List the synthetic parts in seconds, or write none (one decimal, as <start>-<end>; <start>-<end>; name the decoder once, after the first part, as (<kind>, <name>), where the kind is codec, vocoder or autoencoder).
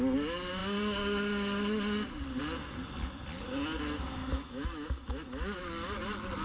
4.2-5.6 (autoencoder, DAC-VAE)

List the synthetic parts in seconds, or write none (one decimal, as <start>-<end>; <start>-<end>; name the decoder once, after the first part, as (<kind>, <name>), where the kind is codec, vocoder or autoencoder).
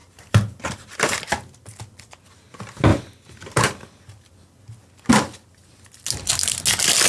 0.0-1.2 (vocoder, BigVGAN v2)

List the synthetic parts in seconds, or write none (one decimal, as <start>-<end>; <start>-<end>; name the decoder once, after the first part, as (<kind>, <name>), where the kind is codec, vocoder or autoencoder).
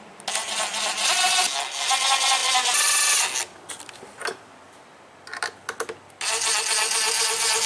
none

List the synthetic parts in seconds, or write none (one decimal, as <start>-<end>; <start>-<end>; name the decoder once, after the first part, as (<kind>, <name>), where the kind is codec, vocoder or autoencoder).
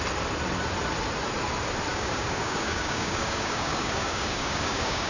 1.9-5.1 (codec, DAC)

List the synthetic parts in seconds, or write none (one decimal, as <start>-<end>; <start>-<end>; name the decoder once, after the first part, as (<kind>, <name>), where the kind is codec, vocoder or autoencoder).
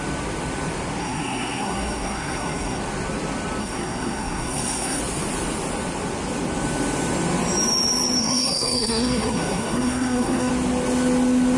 1.0-2.8 (codec, SNAC); 3.6-5.0; 8.2-10.5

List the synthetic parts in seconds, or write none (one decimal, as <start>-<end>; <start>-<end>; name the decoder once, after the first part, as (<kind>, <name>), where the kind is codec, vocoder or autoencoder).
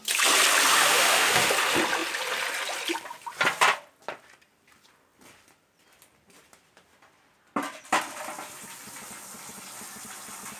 0.7-1.5 (autoencoder, DAC-VAE)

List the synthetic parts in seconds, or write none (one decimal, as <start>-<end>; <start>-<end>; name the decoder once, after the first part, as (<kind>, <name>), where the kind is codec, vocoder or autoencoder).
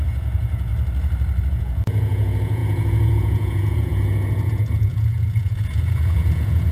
0.0-0.7 (vocoder, Vocos); 1.5-6.7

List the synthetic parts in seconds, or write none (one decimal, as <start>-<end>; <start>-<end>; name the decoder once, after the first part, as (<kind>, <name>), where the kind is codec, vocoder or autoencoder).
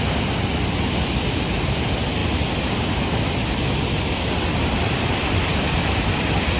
none